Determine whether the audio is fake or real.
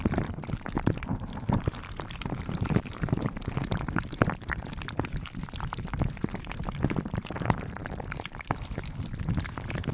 fake